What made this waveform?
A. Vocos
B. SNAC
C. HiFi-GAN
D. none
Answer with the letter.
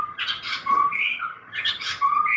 C